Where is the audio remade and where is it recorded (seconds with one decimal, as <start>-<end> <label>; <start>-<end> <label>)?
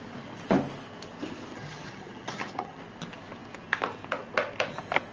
0.0-1.5 recorded; 1.5-2.8 remade; 2.8-5.1 recorded